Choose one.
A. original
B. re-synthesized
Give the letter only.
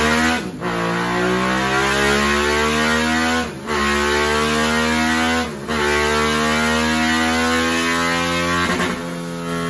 A